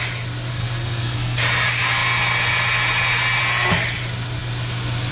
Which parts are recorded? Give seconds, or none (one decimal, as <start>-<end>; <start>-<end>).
0.0-0.5; 1.4-5.1